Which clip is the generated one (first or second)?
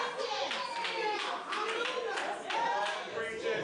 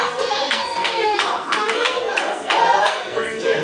second